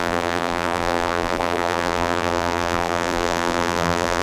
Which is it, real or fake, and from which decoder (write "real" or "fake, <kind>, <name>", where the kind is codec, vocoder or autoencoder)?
fake, vocoder, BigVGAN v2